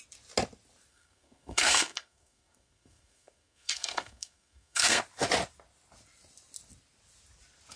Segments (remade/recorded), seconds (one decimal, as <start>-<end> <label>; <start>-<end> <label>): 0.0-0.9 recorded; 0.9-5.0 remade; 5.0-7.8 recorded